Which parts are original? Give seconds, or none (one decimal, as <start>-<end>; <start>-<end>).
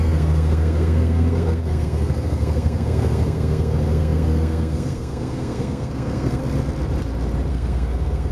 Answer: 6.4-7.5